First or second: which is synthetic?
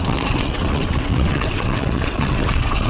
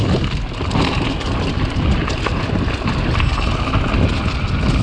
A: first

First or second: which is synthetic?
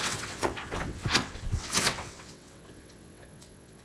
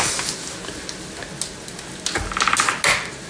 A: first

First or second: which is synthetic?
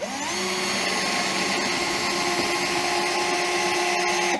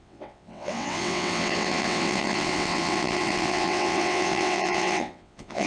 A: second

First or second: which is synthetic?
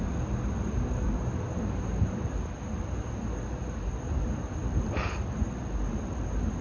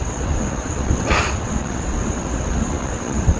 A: second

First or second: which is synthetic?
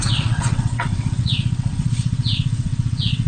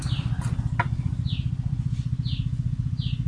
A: first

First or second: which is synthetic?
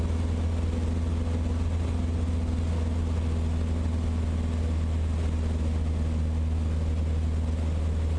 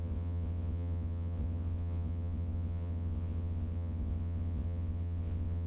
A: second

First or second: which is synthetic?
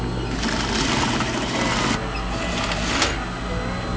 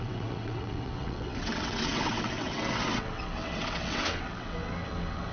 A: second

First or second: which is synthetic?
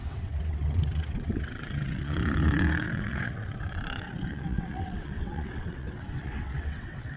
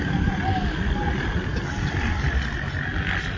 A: first